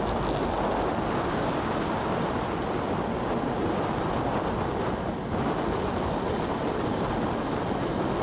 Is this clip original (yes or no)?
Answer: yes